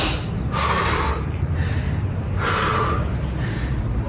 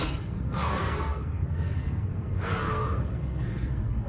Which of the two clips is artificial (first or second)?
second